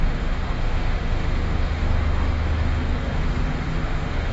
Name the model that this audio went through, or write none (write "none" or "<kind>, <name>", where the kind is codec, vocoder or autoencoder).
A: autoencoder, DAC-VAE